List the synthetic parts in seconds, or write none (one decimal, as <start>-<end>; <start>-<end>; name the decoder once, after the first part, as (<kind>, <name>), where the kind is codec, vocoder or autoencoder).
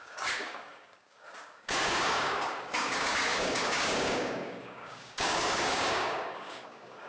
0.0-7.1 (codec, DAC)